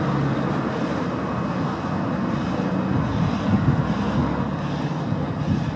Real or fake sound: real